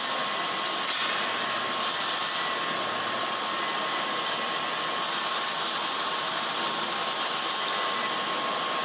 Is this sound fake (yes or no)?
no